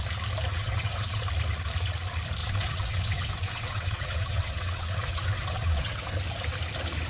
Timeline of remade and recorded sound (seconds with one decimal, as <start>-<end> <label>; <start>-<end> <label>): 0.0-0.5 recorded; 0.5-1.2 remade; 1.2-2.4 recorded; 2.4-6.2 remade; 6.2-7.1 recorded